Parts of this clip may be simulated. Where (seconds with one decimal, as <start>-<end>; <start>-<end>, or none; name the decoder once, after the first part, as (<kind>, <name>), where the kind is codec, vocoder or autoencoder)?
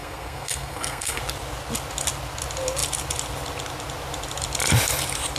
0.0-1.2 (codec, SNAC)